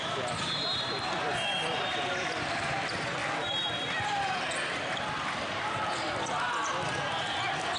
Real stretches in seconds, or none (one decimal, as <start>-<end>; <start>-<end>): 2.5-7.8